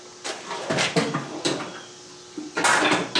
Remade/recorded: recorded